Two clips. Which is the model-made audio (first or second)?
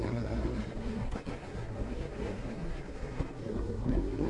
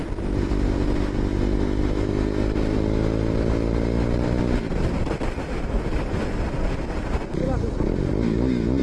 first